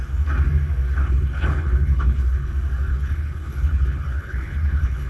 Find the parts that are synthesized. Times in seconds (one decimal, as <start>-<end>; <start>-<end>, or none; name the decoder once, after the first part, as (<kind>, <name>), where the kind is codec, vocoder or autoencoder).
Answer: 1.0-2.5 (codec, HILCodec); 2.9-5.1